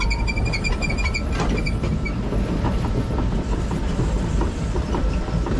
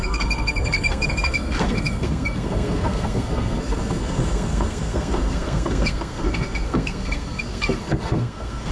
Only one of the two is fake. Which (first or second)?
second